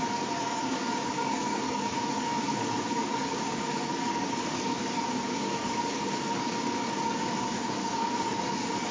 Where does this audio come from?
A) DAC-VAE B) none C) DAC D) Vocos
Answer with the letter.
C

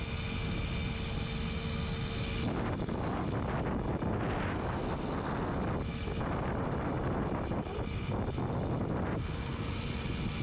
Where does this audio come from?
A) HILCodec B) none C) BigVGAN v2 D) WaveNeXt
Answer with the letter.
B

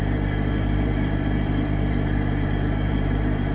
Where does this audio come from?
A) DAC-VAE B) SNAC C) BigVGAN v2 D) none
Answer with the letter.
C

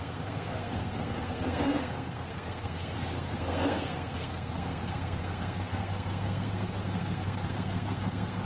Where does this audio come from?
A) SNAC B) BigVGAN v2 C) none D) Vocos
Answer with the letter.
A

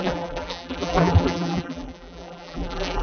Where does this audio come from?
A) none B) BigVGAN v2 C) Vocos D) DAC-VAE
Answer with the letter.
B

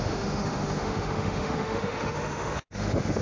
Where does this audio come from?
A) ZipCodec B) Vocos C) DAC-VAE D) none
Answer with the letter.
C